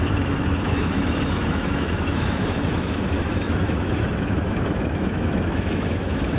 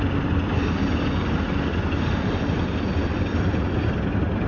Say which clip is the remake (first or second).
first